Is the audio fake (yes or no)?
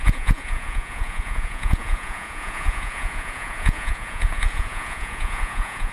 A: yes